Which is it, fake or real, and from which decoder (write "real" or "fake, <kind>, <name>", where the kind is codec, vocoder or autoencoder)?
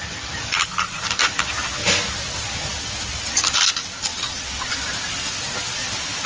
real